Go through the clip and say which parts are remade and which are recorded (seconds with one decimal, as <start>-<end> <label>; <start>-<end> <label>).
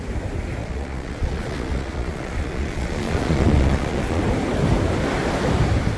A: 0.0-0.6 recorded; 0.6-4.2 remade; 4.2-6.0 recorded